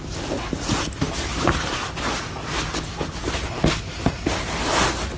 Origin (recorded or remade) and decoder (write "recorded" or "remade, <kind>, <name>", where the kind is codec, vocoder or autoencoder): recorded